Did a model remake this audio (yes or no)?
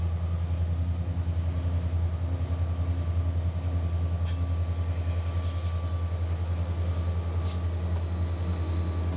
no